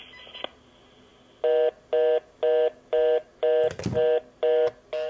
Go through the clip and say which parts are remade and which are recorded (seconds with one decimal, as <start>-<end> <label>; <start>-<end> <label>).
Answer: 0.0-5.1 recorded